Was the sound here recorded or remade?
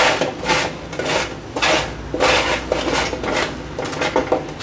recorded